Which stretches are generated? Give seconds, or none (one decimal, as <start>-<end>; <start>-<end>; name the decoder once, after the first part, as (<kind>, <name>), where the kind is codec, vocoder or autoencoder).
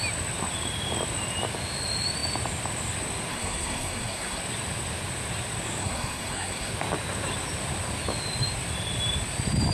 3.3-4.4 (codec, SNAC); 5.8-6.7